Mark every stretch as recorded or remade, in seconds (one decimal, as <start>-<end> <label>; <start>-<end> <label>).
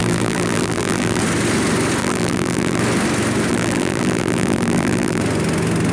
0.0-1.2 remade; 1.2-2.0 recorded; 2.0-2.8 remade; 2.8-3.5 recorded; 3.5-5.2 remade; 5.2-5.9 recorded